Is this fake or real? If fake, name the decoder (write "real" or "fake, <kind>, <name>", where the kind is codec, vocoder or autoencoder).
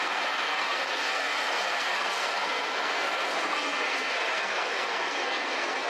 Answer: fake, codec, SNAC